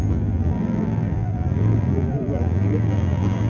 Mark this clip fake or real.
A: fake